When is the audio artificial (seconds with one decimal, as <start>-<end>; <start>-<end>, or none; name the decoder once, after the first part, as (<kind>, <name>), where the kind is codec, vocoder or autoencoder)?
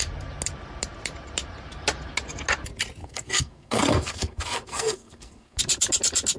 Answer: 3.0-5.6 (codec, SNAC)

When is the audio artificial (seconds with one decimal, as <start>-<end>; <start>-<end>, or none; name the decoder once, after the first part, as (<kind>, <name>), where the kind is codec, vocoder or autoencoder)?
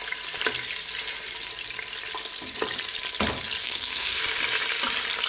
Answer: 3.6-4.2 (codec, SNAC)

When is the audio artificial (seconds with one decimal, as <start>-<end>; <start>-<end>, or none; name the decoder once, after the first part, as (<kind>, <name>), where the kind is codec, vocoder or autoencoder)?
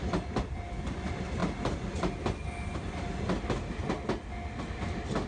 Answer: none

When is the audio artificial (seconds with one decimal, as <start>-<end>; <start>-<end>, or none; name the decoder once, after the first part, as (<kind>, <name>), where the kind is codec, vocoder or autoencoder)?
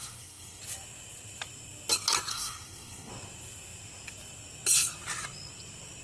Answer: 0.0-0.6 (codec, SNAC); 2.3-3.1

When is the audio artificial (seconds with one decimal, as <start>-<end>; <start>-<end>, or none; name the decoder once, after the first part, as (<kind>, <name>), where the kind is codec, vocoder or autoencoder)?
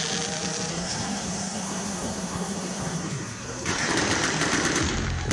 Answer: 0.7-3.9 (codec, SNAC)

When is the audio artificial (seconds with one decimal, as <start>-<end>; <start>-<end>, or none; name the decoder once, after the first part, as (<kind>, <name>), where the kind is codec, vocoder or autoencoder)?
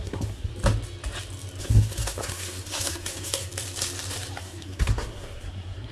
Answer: 0.0-0.5 (codec, SNAC); 1.6-3.5; 4.4-5.9